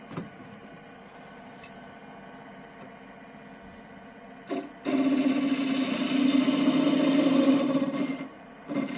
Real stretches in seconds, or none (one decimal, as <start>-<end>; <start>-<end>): 2.0-7.1